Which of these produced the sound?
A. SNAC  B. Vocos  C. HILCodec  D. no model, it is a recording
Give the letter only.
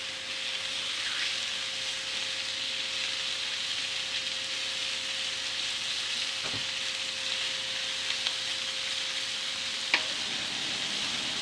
D